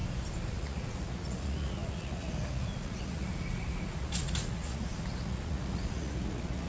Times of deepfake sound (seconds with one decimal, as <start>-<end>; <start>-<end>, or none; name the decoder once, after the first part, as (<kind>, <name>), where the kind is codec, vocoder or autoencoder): 0.5-6.7 (vocoder, Vocos)